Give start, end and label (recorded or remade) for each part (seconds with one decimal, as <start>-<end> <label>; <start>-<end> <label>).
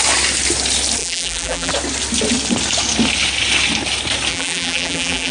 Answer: 0.0-1.0 recorded; 1.0-1.7 remade; 1.7-4.3 recorded; 4.3-5.3 remade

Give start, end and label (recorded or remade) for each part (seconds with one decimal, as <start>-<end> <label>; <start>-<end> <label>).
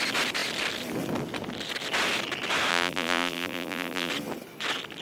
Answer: 0.0-2.7 recorded; 2.7-4.1 remade; 4.1-5.0 recorded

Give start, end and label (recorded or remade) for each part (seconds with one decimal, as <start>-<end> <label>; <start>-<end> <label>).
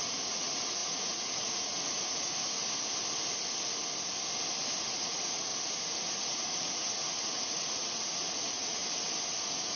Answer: 0.0-2.6 remade; 2.6-4.8 recorded; 4.8-5.5 remade; 5.5-6.1 recorded; 6.1-8.8 remade; 8.8-9.4 recorded; 9.4-9.8 remade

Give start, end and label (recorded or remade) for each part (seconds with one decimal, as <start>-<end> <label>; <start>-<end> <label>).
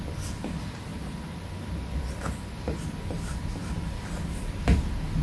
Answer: 0.0-5.2 recorded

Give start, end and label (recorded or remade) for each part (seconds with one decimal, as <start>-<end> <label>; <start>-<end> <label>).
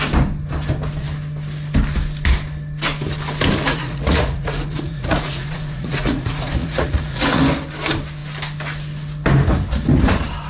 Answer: 0.0-3.7 recorded; 3.7-7.4 remade; 7.4-10.5 recorded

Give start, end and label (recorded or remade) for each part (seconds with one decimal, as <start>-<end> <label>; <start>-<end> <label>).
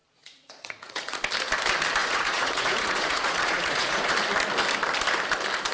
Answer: 0.0-1.2 remade; 1.2-2.0 recorded; 2.0-4.1 remade; 4.1-5.7 recorded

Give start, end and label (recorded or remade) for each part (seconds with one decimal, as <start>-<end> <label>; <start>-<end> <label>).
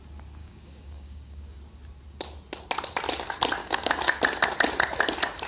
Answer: 0.0-0.4 recorded; 0.4-1.6 remade; 1.6-3.6 recorded; 3.6-4.2 remade; 4.2-5.5 recorded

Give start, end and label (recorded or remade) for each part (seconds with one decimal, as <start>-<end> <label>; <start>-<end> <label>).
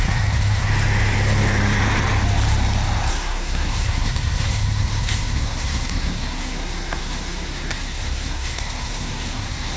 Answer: 0.0-0.7 remade; 0.7-3.1 recorded; 3.1-9.8 remade